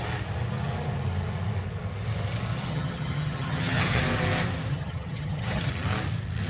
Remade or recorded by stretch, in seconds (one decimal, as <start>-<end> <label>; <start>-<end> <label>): 0.0-2.5 recorded; 2.5-4.0 remade; 4.0-4.7 recorded; 4.7-5.7 remade; 5.7-6.5 recorded